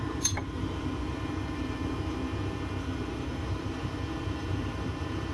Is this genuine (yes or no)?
no